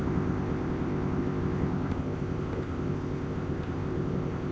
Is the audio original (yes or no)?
no